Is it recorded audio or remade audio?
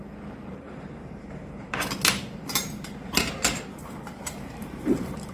remade